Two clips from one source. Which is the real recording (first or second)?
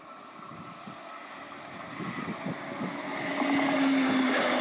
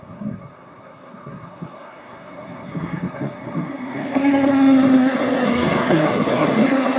first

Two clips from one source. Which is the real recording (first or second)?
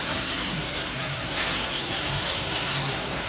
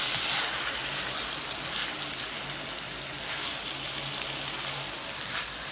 second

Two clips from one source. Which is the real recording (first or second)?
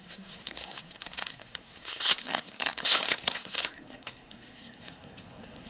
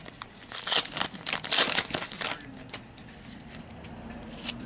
second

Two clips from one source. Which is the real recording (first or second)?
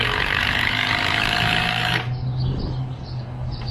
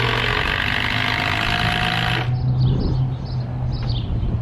second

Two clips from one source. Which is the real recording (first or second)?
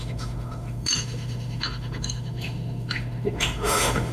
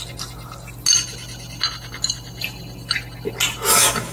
second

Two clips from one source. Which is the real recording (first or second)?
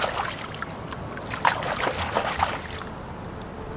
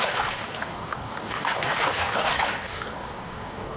first